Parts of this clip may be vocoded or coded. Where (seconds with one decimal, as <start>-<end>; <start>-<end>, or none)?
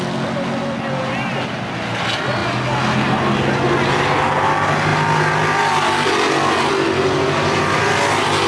none